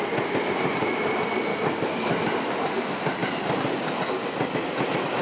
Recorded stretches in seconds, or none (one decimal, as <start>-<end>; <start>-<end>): 0.0-5.2